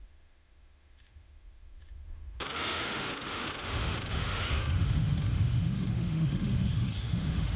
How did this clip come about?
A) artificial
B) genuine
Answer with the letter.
A